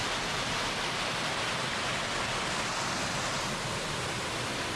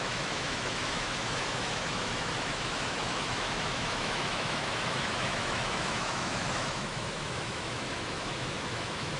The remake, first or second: second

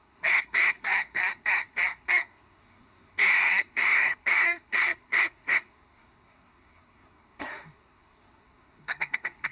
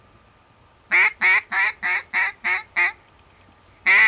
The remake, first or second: first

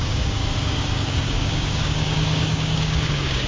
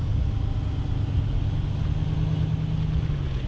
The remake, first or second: first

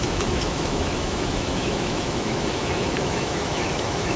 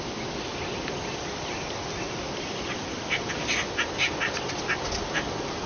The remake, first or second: first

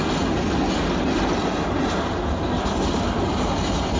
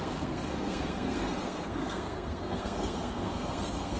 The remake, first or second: second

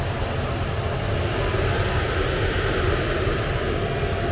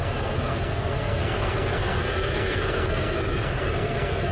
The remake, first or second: second